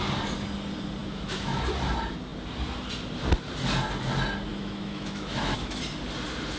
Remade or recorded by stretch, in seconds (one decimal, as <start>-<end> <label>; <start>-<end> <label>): 0.0-1.0 recorded; 1.0-1.6 remade; 1.6-4.5 recorded; 4.5-5.8 remade; 5.8-6.6 recorded